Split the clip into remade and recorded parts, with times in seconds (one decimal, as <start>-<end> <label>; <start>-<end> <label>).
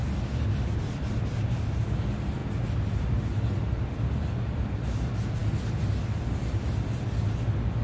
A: 0.0-7.8 recorded